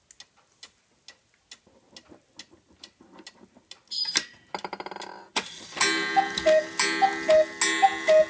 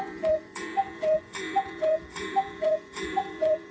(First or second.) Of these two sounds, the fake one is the second